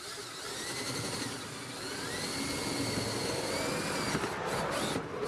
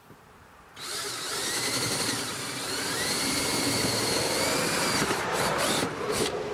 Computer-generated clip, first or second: second